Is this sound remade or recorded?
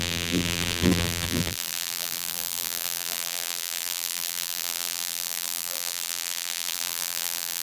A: remade